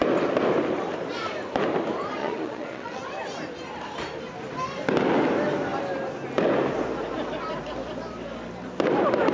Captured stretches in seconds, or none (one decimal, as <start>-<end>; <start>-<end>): 0.0-2.2; 3.0-9.3